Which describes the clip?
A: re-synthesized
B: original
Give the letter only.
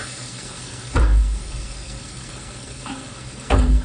A